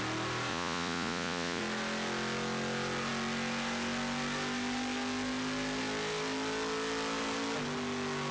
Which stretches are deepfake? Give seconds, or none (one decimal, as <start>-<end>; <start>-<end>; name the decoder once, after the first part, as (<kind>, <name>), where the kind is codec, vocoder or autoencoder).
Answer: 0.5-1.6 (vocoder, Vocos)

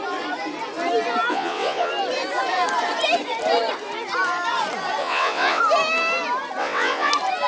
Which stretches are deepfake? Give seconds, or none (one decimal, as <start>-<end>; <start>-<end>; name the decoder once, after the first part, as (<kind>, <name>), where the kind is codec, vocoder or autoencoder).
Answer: 1.3-1.9 (vocoder, WaveNeXt); 5.0-5.6; 6.6-7.1

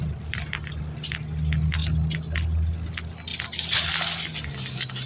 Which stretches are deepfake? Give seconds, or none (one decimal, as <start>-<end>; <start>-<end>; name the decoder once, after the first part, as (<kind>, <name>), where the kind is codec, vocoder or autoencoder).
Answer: none